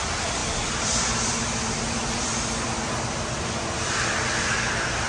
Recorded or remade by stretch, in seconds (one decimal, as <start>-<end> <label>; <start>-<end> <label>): 0.0-0.4 recorded; 0.4-3.5 remade; 3.5-5.1 recorded